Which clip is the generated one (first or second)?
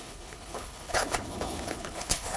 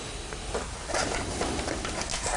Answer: first